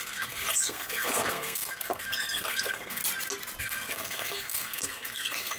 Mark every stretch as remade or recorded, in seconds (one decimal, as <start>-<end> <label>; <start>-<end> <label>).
0.0-3.0 remade; 3.0-3.6 recorded; 3.6-5.6 remade